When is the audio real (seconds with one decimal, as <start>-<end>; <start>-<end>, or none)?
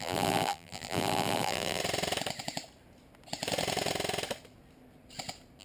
1.8-5.6